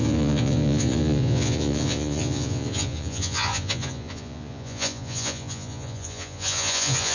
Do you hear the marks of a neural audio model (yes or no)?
yes